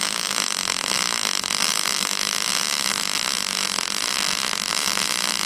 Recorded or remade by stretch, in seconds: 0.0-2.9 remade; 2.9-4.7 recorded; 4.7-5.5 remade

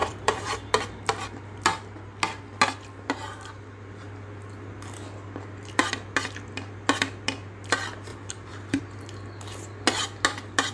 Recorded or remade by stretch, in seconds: 0.0-0.7 remade; 0.7-8.1 recorded; 8.1-8.8 remade; 8.8-10.7 recorded

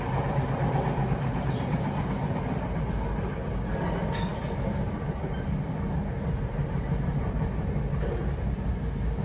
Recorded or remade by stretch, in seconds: 0.0-9.2 recorded

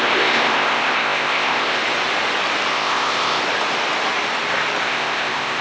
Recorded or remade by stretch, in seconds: 0.0-1.8 remade; 1.8-2.7 recorded; 2.7-3.4 remade; 3.4-4.8 recorded; 4.8-5.6 remade